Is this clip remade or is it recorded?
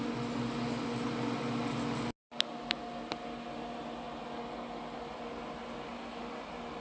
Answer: recorded